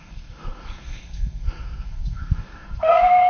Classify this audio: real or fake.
fake